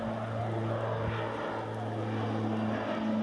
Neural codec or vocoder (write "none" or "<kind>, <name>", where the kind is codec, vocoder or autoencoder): none